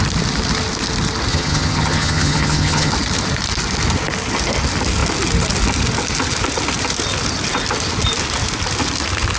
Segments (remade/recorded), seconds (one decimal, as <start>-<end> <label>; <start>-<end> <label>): 0.0-1.3 recorded; 1.3-2.9 remade; 2.9-9.4 recorded